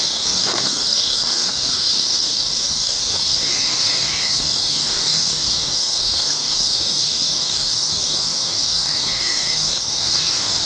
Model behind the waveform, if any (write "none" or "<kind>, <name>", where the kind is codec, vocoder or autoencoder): codec, DAC